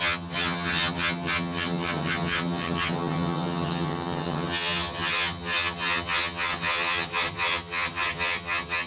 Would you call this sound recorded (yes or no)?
no